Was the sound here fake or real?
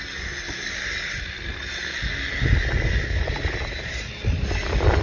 real